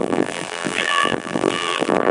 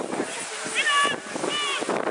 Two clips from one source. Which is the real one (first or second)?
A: second